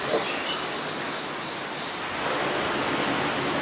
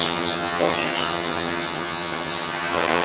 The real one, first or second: first